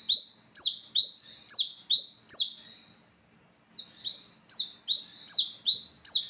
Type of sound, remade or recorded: recorded